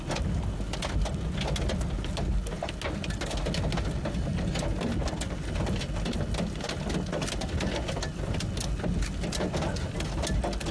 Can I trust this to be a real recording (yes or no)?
yes